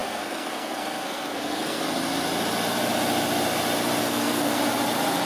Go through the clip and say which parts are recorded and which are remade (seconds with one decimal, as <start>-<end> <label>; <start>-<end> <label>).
0.0-1.8 remade; 1.8-4.0 recorded; 4.0-4.6 remade; 4.6-5.3 recorded